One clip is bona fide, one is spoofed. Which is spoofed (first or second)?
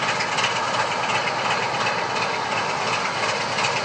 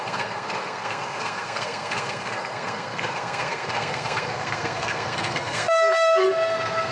second